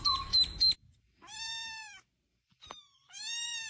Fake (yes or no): yes